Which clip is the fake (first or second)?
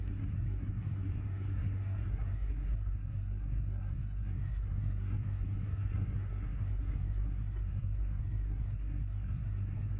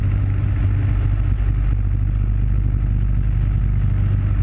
first